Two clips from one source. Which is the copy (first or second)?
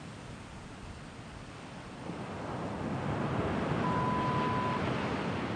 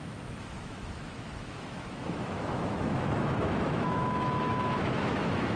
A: second